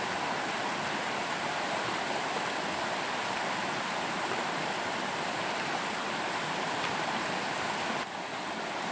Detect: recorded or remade recorded